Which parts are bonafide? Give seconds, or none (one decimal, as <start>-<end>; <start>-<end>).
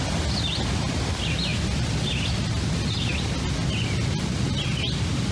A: 0.0-5.3